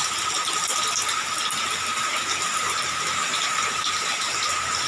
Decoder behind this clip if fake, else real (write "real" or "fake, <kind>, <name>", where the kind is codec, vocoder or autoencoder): fake, vocoder, BigVGAN v2